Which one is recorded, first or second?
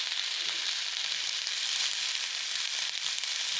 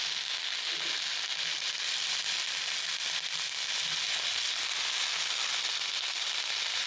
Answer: second